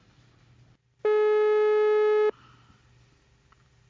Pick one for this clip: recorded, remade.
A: recorded